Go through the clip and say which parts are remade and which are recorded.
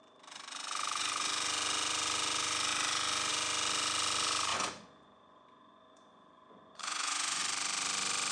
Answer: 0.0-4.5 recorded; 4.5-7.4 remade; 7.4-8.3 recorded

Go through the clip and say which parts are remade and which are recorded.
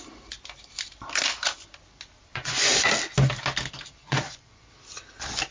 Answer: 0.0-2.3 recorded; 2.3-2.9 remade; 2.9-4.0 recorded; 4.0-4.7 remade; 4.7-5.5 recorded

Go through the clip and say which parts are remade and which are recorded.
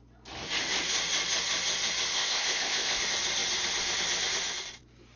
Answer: 0.0-2.1 recorded; 2.1-3.0 remade; 3.0-5.2 recorded